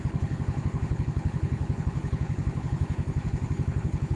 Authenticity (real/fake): fake